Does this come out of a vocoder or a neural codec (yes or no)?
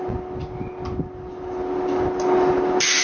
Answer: no